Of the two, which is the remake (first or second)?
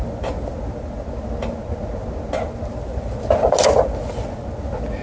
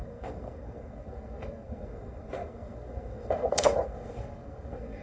second